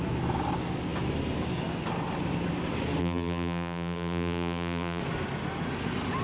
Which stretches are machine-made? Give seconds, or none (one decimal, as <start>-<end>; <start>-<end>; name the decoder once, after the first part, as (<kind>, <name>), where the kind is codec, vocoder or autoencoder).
3.0-5.0 (vocoder, BigVGAN v2)